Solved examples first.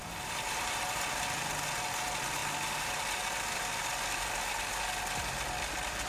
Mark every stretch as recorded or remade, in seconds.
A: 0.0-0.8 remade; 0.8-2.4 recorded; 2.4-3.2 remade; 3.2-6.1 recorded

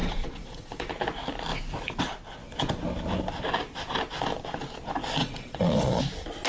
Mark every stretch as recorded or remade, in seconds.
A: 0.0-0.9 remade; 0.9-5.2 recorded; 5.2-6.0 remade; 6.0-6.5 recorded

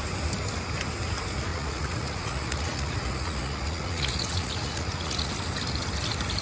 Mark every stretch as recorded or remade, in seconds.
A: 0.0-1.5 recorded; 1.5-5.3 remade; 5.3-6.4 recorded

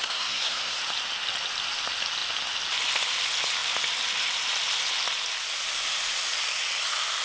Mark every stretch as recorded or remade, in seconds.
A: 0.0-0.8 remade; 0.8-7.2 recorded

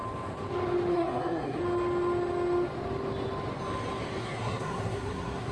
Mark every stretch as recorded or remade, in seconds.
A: 0.0-0.9 recorded; 0.9-1.6 remade; 1.6-4.2 recorded; 4.2-5.5 remade

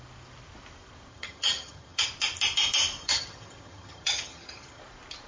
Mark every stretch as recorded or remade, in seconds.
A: 0.0-1.1 recorded; 1.1-2.1 remade; 2.1-3.0 recorded; 3.0-4.8 remade; 4.8-5.3 recorded

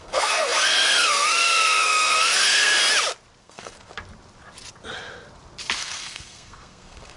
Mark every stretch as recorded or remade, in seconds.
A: 0.0-2.8 remade; 2.8-3.4 recorded; 3.4-3.9 remade; 3.9-5.8 recorded; 5.8-7.2 remade